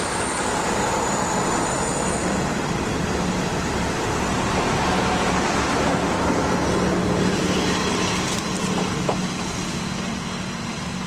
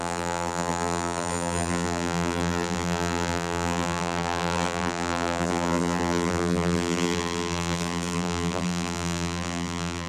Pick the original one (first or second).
first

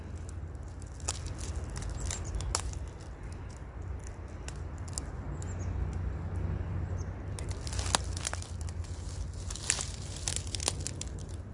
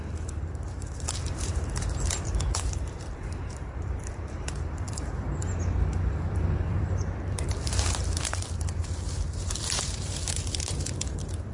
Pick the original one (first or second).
first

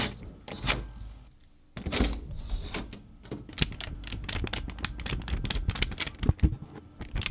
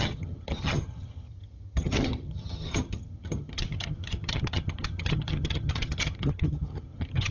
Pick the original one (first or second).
first